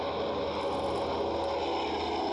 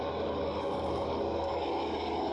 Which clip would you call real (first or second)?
first